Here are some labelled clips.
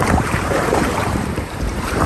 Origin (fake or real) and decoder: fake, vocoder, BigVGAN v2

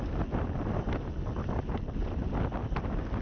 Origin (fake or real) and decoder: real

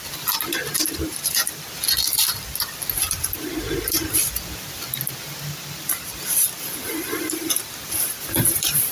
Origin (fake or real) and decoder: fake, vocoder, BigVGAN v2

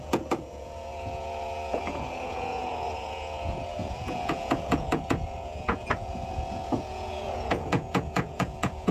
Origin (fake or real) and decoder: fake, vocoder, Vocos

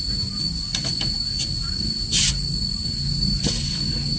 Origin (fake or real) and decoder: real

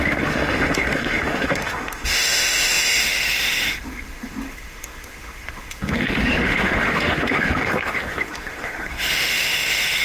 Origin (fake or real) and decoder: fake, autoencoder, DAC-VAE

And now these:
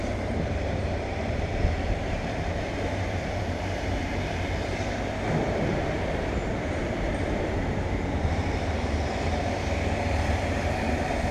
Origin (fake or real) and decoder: fake, vocoder, BigVGAN v2